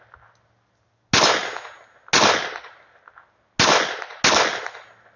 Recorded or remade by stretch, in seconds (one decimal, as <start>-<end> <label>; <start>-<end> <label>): 0.0-5.2 recorded